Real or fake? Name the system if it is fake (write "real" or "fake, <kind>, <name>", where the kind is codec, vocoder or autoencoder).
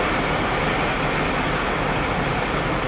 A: real